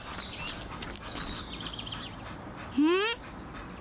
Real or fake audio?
real